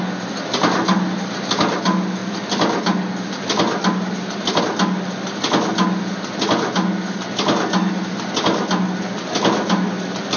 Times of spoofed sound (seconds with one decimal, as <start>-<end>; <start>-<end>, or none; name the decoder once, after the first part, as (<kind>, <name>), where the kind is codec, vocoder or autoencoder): none